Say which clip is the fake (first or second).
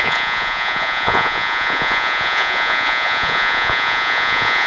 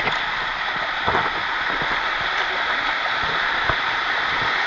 first